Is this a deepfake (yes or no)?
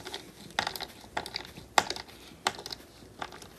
no